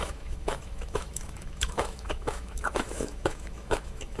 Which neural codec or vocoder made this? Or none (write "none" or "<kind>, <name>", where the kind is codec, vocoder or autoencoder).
autoencoder, DAC-VAE